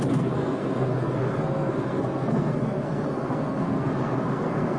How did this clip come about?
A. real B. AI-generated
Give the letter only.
B